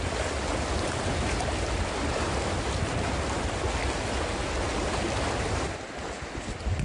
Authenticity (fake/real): real